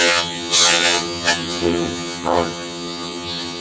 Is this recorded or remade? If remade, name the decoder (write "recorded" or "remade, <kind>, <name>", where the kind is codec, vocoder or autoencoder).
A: remade, vocoder, HiFi-GAN